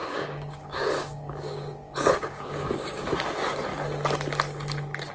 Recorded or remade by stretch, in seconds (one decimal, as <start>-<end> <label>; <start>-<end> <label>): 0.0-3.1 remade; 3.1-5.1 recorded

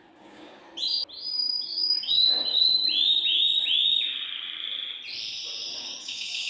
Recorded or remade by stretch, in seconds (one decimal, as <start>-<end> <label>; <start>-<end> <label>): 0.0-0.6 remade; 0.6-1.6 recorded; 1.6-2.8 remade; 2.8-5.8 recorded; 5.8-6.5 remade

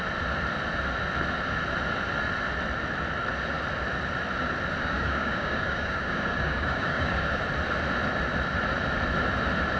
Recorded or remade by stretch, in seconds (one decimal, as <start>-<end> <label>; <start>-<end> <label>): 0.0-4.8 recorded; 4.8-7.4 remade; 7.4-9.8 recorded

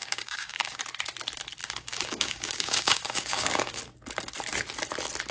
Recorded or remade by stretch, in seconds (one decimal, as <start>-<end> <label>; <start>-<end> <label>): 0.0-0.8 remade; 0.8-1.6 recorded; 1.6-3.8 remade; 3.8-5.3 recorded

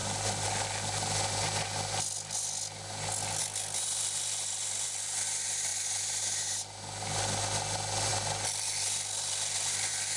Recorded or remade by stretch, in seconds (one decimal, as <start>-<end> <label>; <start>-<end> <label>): 0.0-10.2 recorded

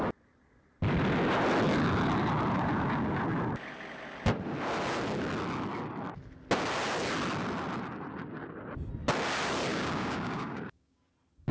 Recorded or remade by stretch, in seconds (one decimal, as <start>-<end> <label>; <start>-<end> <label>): 0.0-9.7 recorded; 9.7-11.1 remade; 11.1-11.5 recorded

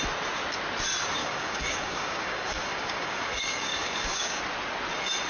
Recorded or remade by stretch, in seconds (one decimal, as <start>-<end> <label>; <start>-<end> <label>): 0.0-1.2 recorded; 1.2-4.4 remade; 4.4-5.3 recorded

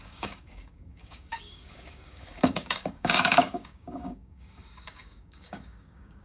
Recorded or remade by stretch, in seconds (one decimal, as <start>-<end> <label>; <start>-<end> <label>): 0.0-6.2 remade